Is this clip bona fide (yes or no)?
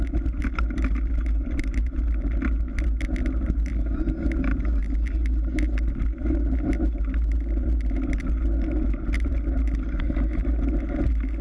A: yes